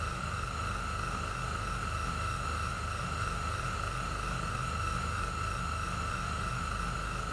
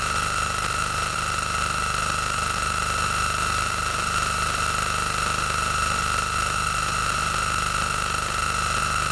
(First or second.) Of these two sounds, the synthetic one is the first